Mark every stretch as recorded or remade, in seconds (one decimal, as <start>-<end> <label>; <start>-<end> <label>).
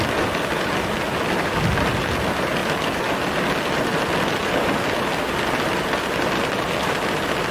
0.0-7.5 recorded